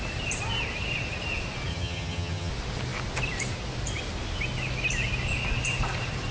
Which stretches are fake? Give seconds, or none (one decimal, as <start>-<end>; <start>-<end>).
1.7-2.5